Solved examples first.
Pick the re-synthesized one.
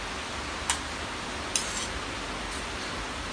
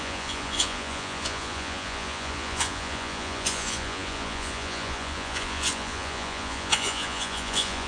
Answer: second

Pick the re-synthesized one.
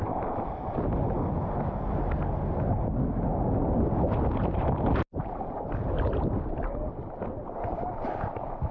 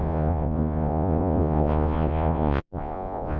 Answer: second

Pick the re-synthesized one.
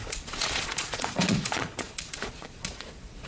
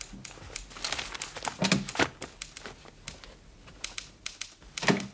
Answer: first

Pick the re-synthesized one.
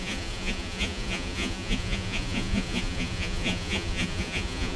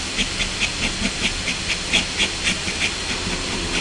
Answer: first